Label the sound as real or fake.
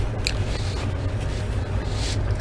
real